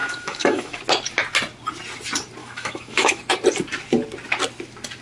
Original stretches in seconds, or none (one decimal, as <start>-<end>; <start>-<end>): 0.8-2.4; 3.2-5.0